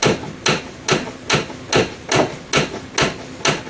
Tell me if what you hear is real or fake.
real